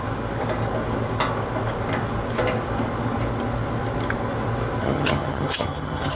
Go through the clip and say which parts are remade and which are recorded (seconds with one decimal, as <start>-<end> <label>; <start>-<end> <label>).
0.0-4.8 recorded; 4.8-6.2 remade